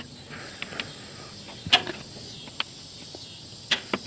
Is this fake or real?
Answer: real